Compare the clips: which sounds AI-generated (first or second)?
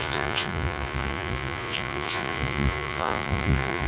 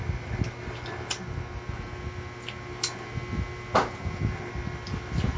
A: first